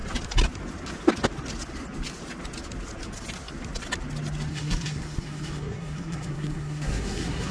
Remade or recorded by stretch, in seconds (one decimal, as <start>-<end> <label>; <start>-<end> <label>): 0.0-4.5 recorded; 4.5-7.5 remade